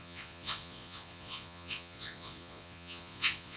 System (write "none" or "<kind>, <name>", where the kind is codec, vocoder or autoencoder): vocoder, Vocos